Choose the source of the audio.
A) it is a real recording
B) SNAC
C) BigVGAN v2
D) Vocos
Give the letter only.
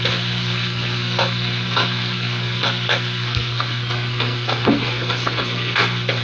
B